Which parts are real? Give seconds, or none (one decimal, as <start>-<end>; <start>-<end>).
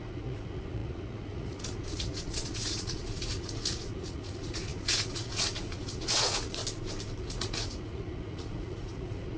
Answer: 6.6-7.2